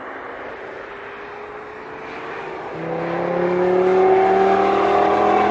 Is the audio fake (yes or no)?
no